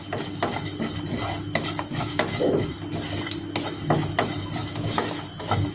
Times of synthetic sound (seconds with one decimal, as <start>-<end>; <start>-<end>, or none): 1.9-2.7; 4.6-5.2